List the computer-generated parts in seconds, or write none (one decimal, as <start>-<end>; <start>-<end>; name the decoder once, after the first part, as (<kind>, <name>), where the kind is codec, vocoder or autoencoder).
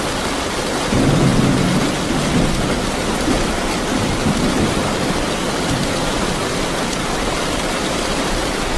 0.0-1.3 (vocoder, BigVGAN v2); 2.0-8.8